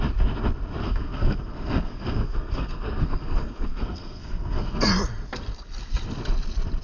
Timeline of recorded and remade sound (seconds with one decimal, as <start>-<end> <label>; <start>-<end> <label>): 0.0-0.8 recorded; 0.8-4.9 remade; 4.9-6.8 recorded

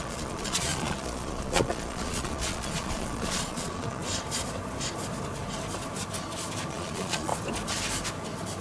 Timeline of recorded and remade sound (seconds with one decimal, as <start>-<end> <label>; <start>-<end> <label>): 0.0-4.0 remade; 4.0-6.7 recorded; 6.7-7.3 remade; 7.3-8.6 recorded

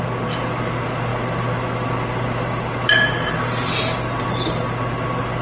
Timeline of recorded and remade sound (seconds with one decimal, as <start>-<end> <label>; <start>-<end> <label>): 0.0-5.4 recorded

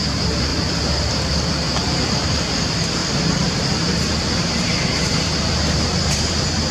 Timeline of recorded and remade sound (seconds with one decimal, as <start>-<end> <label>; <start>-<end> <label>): 0.0-3.0 recorded; 3.0-6.3 remade; 6.3-6.7 recorded

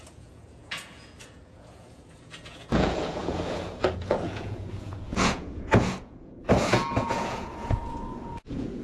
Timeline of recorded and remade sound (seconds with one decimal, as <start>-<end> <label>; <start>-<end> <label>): 0.0-8.8 remade

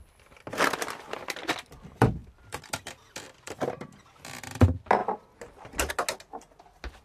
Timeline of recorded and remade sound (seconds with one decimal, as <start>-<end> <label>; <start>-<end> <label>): 0.0-2.2 recorded; 2.2-3.5 remade; 3.5-7.0 recorded